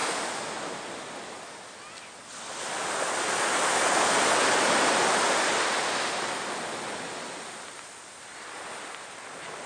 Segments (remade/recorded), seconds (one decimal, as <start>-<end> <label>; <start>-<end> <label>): 0.0-9.7 recorded